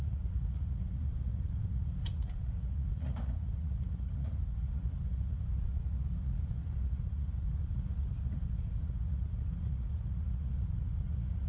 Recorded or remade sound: remade